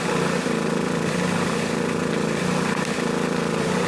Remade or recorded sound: recorded